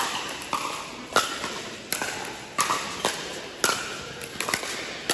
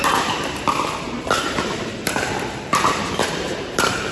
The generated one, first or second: second